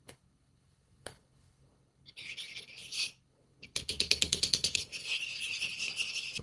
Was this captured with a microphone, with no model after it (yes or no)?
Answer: no